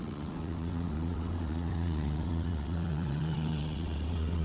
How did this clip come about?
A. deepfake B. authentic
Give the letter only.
A